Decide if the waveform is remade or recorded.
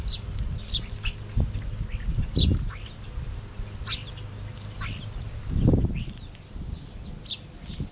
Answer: recorded